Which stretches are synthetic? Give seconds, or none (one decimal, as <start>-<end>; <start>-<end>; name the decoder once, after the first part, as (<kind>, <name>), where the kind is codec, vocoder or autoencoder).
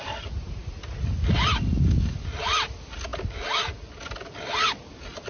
none